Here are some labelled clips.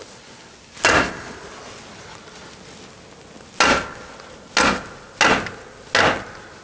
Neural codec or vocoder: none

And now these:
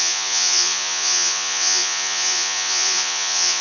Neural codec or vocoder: vocoder, Vocos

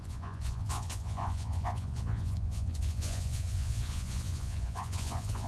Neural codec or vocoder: vocoder, Vocos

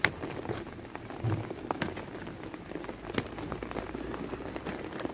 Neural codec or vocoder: none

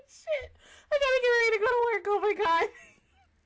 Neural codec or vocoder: none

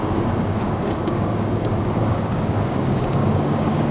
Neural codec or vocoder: codec, DAC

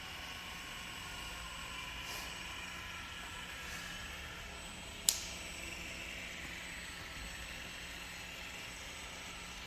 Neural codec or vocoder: none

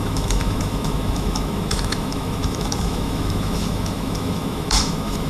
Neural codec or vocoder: autoencoder, DAC-VAE